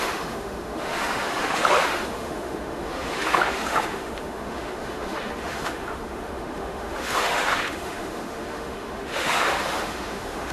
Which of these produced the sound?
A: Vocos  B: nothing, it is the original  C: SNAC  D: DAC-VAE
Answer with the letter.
D